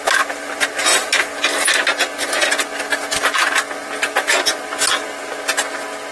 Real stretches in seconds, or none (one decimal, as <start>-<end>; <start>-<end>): 0.0-6.1